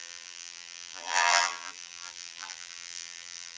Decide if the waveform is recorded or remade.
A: remade